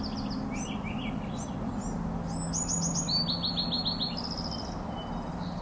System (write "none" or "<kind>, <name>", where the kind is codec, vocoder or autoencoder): none